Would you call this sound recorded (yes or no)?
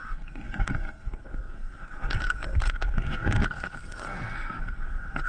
no